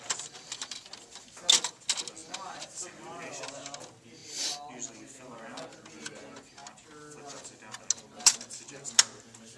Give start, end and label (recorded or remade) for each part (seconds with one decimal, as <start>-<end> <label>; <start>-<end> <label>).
0.0-9.6 recorded